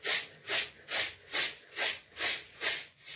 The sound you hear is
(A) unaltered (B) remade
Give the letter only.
B